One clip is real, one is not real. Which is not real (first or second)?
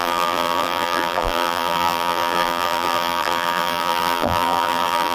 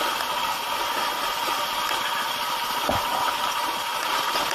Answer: first